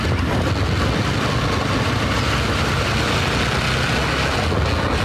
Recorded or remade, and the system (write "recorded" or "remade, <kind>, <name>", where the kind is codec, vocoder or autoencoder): recorded